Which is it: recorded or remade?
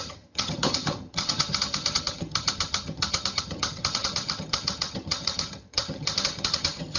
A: remade